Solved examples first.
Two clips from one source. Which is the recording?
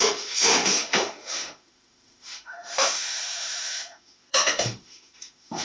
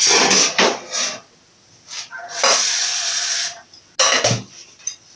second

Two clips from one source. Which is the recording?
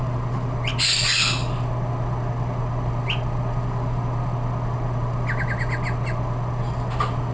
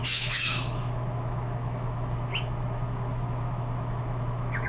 first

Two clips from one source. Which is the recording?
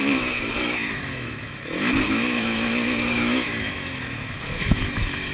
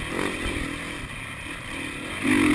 second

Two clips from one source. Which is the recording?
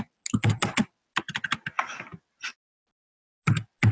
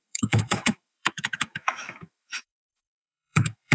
first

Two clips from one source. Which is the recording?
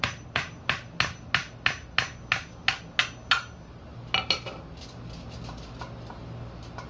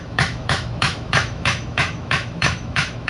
first